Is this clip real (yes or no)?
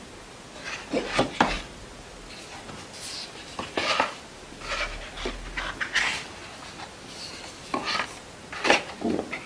yes